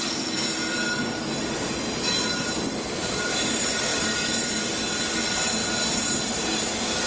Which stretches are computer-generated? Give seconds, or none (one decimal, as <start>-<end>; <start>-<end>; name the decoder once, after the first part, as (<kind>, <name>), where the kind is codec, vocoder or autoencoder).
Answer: none